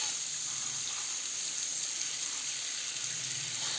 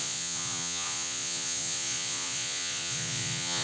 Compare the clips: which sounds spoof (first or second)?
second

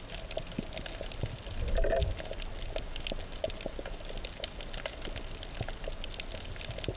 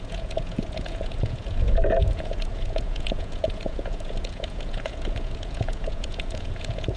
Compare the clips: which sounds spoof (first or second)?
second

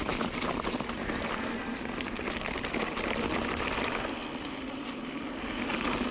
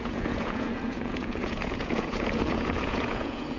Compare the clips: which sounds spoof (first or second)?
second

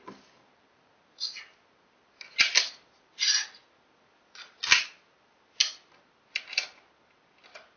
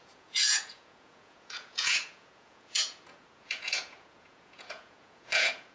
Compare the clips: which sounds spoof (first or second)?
second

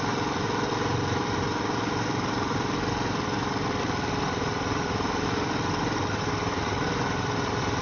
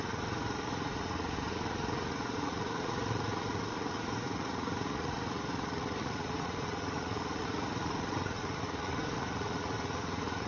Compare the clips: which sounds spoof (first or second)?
second